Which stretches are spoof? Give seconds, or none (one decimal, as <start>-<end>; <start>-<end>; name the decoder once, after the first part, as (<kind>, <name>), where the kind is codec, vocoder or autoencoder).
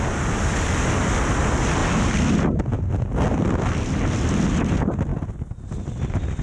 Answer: none